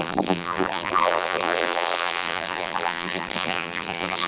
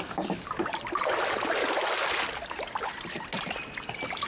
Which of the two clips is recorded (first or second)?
second